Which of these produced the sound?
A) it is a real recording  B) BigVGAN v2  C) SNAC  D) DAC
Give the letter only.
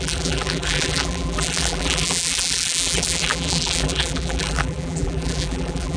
B